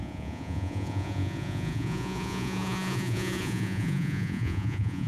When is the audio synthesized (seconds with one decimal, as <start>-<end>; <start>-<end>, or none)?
0.0-5.1